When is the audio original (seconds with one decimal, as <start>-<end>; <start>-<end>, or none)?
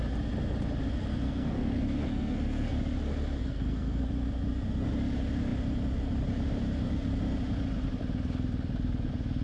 0.0-1.1; 2.7-3.4; 4.0-9.4